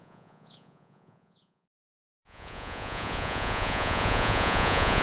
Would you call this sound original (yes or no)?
no